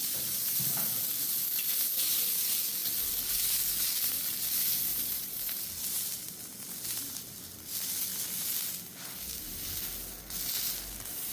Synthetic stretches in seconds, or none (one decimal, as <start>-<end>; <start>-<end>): 0.0-1.0; 4.9-5.6